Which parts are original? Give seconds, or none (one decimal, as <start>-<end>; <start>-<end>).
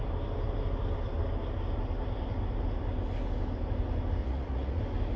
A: 0.0-4.2; 4.8-5.2